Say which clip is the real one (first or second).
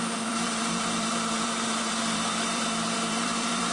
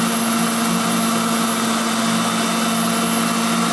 second